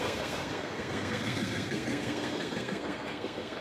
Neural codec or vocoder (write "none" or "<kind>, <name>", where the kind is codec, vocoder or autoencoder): codec, SNAC